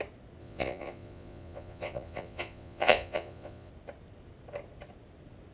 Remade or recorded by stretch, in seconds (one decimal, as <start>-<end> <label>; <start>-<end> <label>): 0.0-0.4 recorded; 0.4-3.7 remade; 3.7-5.5 recorded